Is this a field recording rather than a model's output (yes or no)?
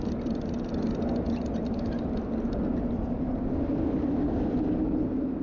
yes